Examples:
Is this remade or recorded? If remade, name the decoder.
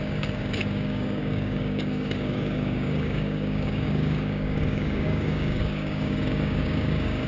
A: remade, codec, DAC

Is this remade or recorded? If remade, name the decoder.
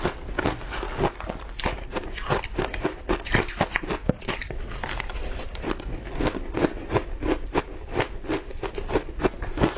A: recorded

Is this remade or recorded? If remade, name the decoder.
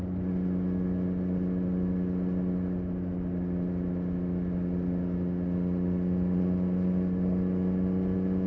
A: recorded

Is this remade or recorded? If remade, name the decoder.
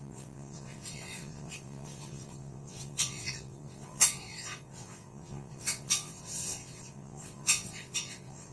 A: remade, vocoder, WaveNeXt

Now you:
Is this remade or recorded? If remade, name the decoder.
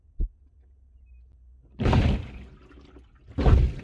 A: recorded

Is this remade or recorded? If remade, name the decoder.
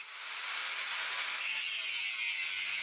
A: remade, vocoder, BigVGAN v2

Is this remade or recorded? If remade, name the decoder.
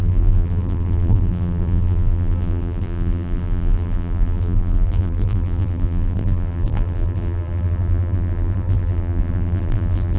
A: remade, vocoder, BigVGAN v2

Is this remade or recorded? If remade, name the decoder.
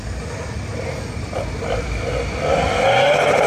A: recorded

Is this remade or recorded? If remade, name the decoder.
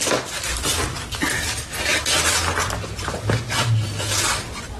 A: recorded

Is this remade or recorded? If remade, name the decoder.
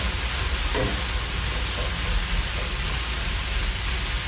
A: recorded